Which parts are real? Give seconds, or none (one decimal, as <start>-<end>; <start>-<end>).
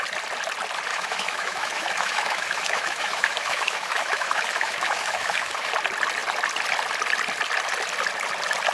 0.0-0.9; 5.7-8.7